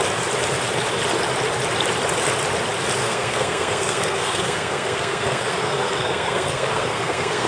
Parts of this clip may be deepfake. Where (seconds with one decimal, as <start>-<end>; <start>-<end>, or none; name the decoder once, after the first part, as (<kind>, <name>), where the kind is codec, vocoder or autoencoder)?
3.0-7.5 (codec, SNAC)